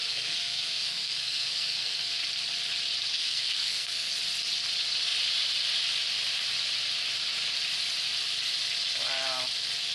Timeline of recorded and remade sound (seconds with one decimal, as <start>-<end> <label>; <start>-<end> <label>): 0.0-2.1 remade; 2.1-3.1 recorded; 3.1-4.1 remade; 4.1-9.9 recorded